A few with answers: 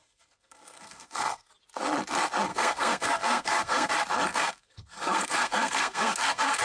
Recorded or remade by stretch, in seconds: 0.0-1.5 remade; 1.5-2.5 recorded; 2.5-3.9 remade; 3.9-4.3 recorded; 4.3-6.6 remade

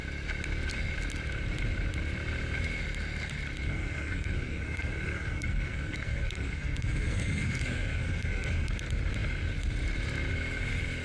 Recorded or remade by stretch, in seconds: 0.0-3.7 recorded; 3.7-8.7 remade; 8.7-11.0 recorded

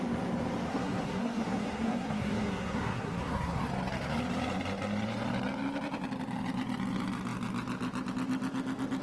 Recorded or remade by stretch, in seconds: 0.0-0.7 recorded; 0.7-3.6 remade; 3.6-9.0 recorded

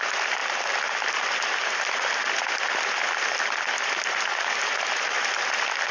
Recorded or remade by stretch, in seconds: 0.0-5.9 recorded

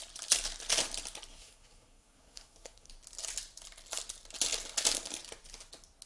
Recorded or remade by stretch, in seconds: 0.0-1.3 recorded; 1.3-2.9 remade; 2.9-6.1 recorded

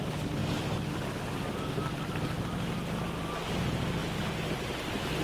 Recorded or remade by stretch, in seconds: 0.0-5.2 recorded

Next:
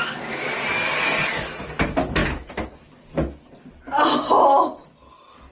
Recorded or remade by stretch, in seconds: 0.0-5.5 recorded

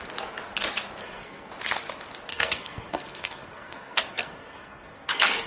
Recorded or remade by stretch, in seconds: 0.0-1.0 recorded; 1.0-1.5 remade; 1.5-2.3 recorded; 2.3-5.5 remade